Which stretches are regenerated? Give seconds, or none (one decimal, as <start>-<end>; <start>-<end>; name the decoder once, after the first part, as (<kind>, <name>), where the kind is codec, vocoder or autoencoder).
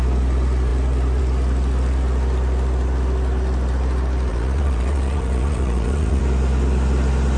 4.3-6.2 (vocoder, Vocos)